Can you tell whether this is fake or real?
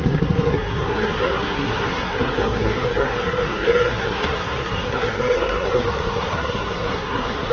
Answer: fake